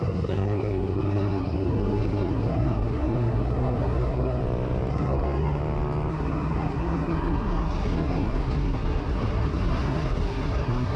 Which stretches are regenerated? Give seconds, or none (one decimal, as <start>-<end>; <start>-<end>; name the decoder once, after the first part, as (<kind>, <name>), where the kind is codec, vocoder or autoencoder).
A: 0.0-4.4 (codec, SNAC); 4.9-5.6; 6.1-11.0